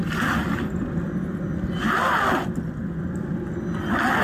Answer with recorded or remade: recorded